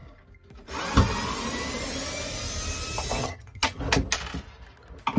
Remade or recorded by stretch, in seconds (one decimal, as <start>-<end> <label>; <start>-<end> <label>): 0.0-3.2 recorded; 3.2-3.8 remade; 3.8-5.2 recorded